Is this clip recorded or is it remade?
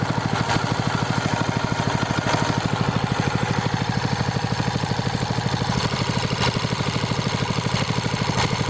remade